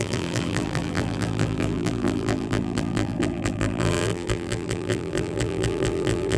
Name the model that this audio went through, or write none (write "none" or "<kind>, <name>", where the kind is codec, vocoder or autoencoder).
vocoder, BigVGAN v2